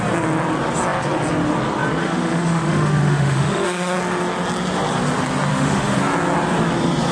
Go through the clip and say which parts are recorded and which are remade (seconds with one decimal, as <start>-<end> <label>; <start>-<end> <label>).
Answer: 0.0-2.0 recorded; 2.0-4.0 remade; 4.0-5.5 recorded; 5.5-6.0 remade; 6.0-7.1 recorded